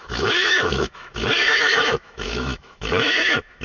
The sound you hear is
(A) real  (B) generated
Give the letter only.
B